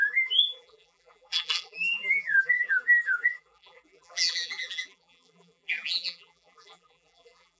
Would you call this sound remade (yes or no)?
yes